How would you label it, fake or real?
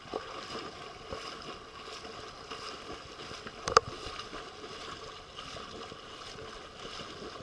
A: real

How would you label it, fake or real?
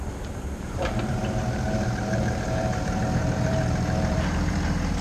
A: fake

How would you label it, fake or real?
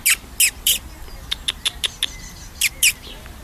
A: real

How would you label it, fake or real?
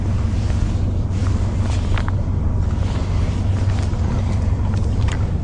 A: real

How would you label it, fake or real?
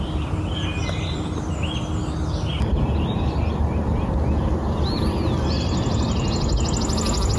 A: real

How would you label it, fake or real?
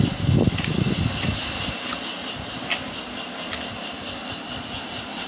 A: real